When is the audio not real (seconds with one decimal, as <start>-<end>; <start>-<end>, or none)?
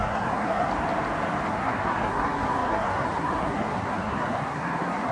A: 0.0-0.7; 1.5-5.1